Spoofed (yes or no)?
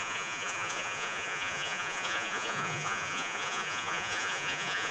yes